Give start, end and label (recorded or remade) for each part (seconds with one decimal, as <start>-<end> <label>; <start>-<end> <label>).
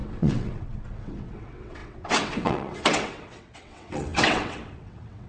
0.0-5.3 remade